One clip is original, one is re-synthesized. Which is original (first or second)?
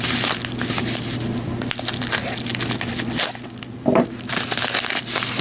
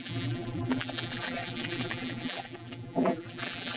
first